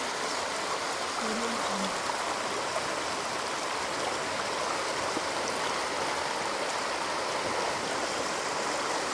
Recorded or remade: recorded